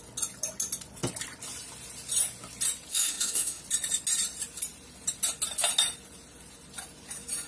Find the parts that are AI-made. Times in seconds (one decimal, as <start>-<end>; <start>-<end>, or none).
2.9-3.6